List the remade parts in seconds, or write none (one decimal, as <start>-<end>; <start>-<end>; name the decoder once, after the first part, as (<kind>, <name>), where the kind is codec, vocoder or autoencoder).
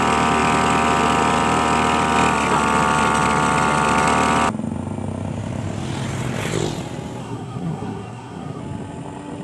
7.2-8.6 (codec, SNAC)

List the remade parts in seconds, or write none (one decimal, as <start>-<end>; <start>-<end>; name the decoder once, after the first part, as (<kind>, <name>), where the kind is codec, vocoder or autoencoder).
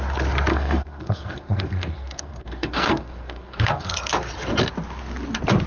0.5-3.9 (codec, SNAC)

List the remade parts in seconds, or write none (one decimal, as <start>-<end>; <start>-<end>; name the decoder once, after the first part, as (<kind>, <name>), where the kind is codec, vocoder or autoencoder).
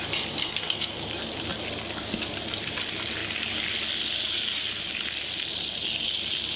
0.4-0.9 (codec, SNAC)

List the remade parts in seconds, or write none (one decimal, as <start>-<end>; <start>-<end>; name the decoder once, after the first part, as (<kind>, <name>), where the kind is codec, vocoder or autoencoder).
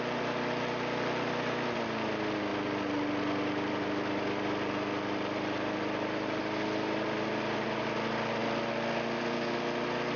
none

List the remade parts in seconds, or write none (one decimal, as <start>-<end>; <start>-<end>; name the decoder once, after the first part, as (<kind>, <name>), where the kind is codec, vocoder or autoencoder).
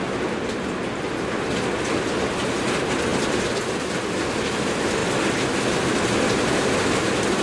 none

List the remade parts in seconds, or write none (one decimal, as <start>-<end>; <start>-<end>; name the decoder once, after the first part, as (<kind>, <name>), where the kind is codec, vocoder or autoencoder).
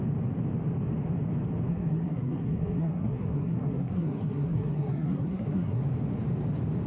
1.7-5.8 (codec, SNAC)